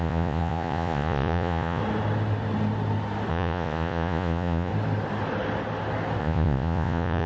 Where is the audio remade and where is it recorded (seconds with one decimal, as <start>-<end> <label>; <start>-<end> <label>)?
0.0-1.8 remade; 1.8-3.3 recorded; 3.3-4.7 remade; 4.7-6.2 recorded; 6.2-7.3 remade